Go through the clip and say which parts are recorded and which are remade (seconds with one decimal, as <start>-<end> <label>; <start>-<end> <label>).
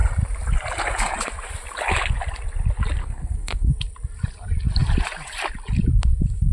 0.0-3.0 recorded; 3.0-3.7 remade; 3.7-6.5 recorded